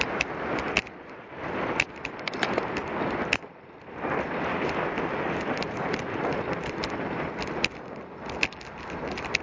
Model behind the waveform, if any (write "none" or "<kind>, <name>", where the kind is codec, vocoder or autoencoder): none